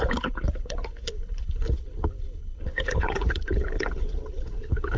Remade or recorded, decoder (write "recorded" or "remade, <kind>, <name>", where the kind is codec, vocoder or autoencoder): remade, codec, HILCodec